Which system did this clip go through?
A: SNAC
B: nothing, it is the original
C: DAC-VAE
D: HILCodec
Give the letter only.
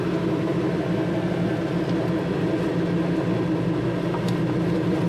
B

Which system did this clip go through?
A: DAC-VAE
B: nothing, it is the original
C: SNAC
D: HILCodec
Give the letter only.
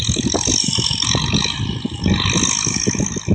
B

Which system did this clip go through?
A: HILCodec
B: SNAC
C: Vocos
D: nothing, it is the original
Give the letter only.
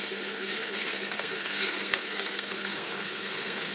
B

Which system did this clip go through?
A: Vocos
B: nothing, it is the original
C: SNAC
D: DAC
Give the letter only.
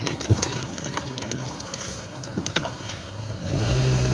C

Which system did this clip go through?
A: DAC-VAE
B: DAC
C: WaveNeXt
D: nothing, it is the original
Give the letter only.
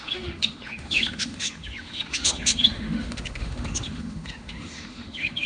A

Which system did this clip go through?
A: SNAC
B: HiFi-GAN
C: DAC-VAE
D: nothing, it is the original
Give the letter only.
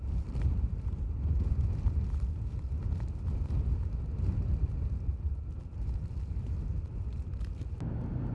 D